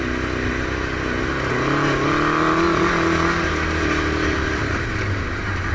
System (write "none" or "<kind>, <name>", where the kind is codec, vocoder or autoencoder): none